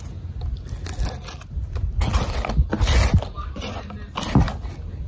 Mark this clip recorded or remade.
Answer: recorded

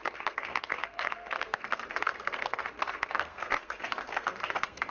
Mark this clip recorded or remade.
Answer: remade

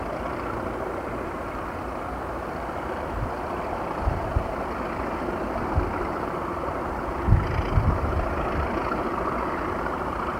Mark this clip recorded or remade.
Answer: recorded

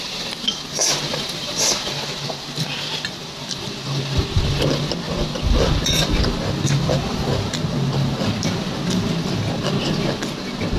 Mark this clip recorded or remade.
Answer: recorded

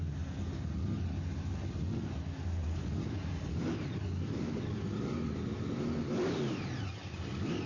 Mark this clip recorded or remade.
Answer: recorded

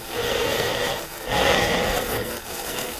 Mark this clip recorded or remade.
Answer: remade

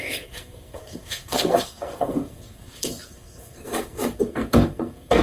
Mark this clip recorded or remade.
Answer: remade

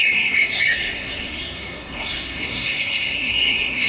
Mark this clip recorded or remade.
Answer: remade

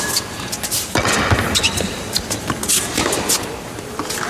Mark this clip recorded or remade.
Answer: recorded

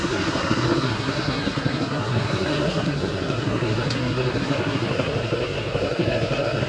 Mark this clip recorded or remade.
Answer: remade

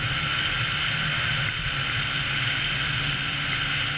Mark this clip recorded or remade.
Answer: recorded